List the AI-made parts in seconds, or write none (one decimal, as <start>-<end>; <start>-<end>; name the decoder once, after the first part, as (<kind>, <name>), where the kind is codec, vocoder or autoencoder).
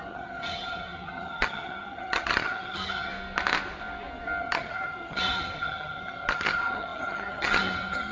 0.0-3.1 (vocoder, HiFi-GAN); 4.4-8.1